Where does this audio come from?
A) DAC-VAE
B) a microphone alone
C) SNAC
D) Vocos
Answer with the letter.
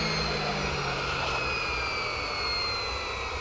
B